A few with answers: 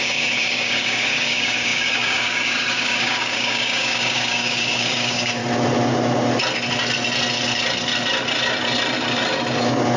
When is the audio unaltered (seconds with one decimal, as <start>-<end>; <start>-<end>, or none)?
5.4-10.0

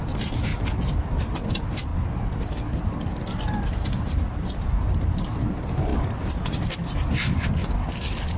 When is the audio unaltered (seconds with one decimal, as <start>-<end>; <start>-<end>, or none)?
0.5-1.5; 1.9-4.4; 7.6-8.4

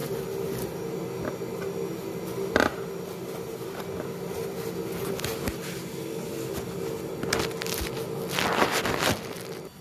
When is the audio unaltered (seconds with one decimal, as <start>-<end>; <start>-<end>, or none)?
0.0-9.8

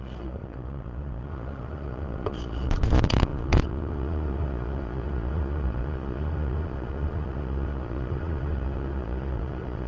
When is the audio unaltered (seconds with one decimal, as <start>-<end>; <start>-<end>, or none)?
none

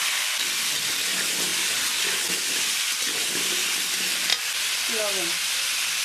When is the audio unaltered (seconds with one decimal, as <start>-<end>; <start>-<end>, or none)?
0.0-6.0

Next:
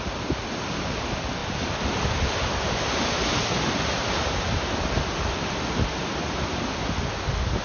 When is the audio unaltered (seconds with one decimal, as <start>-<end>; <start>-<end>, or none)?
0.0-7.6